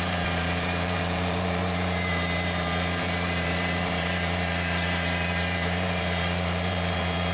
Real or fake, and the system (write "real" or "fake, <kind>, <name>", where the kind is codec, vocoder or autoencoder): fake, vocoder, BigVGAN v2